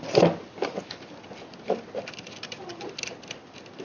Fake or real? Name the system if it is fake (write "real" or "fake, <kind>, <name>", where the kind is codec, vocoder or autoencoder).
real